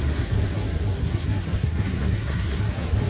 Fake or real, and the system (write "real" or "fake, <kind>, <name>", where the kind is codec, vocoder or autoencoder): fake, codec, SNAC